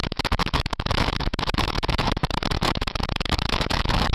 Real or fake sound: fake